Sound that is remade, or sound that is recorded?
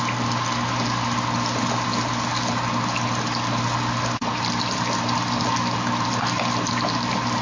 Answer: recorded